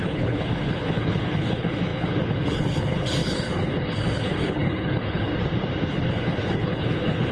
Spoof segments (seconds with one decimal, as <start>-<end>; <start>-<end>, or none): 0.0-5.3; 5.9-7.3